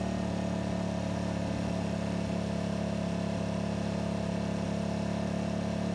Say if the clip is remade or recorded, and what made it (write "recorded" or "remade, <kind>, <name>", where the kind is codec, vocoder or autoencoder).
recorded